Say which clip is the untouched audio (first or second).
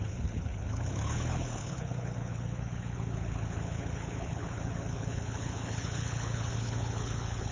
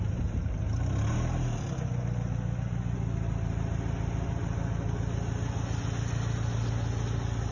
second